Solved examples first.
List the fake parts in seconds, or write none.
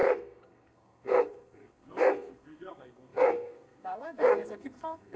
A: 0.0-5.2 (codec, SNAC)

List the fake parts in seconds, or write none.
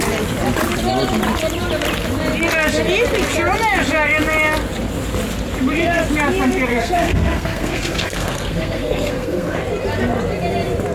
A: 6.7-9.6 (codec, SNAC)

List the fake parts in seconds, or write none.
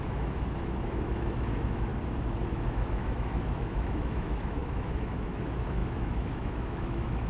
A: 0.0-1.9 (autoencoder, DAC-VAE); 2.5-7.3